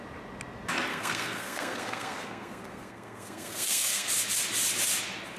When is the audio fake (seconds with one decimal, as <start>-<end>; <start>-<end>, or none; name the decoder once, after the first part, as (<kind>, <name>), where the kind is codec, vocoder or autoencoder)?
0.9-4.1 (codec, SNAC)

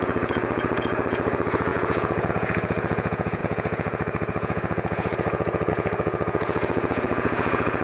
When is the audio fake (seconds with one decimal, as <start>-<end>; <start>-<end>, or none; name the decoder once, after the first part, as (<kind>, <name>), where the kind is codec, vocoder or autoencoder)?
0.0-7.8 (vocoder, Vocos)

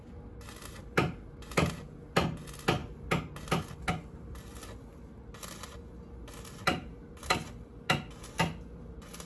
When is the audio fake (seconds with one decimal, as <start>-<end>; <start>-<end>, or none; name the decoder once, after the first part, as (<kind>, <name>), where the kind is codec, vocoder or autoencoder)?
none

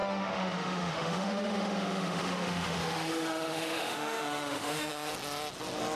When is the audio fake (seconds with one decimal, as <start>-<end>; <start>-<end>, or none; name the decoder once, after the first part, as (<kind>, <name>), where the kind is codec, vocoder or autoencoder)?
0.0-5.1 (autoencoder, DAC-VAE)

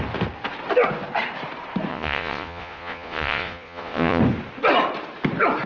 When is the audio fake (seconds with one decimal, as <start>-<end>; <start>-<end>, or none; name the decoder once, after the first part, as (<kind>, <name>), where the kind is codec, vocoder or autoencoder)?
1.9-4.2 (vocoder, Vocos)

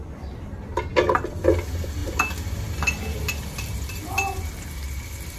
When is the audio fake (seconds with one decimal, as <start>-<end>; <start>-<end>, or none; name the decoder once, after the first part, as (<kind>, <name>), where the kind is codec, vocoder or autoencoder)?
none

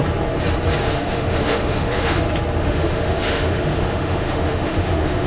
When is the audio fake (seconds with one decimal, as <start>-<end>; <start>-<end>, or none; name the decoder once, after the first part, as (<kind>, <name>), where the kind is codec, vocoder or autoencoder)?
0.8-2.2 (autoencoder, DAC-VAE); 2.6-5.3